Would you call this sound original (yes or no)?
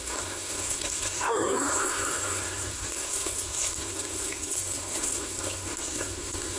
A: no